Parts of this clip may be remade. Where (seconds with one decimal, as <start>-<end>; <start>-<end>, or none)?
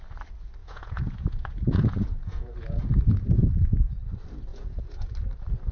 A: 0.6-4.0; 4.5-5.1